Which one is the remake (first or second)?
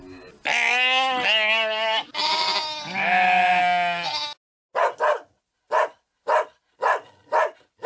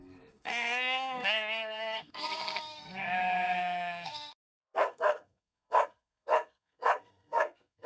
second